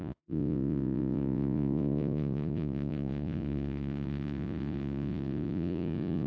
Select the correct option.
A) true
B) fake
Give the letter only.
B